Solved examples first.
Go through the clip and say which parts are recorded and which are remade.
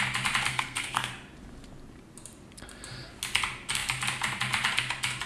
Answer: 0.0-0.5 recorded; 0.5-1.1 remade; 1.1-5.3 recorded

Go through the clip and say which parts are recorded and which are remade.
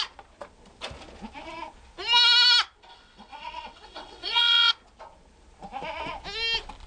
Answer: 0.0-2.9 recorded; 2.9-4.7 remade; 4.7-6.9 recorded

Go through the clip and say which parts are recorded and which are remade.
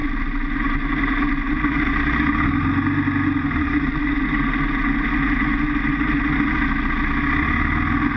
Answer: 0.0-8.2 recorded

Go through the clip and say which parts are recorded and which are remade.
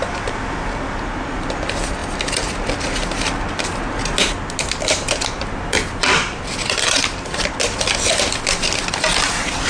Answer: 0.0-9.7 recorded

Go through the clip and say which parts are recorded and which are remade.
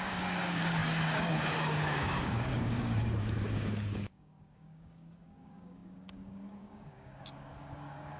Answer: 0.0-8.2 remade